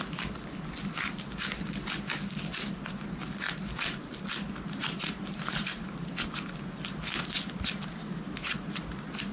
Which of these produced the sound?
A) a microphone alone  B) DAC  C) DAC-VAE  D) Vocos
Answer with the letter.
A